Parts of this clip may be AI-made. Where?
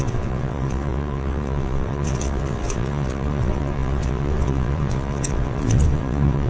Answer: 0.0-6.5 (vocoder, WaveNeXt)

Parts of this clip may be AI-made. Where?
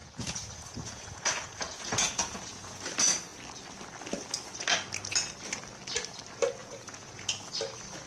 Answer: 0.0-2.8 (vocoder, Vocos); 6.6-7.3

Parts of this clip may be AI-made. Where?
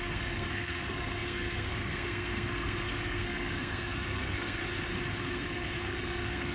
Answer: 0.0-4.6 (codec, SNAC); 5.2-6.5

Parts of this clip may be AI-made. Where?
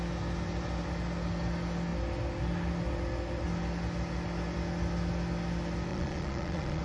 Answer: 5.9-6.8 (vocoder, Vocos)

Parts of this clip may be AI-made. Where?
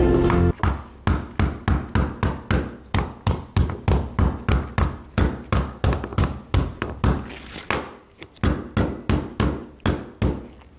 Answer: none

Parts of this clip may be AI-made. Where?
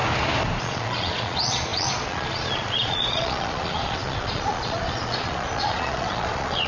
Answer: 0.6-6.7 (vocoder, Vocos)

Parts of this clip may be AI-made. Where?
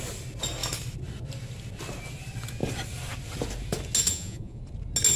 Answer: 4.1-4.6 (vocoder, Vocos)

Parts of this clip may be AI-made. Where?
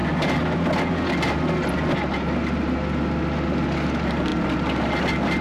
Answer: none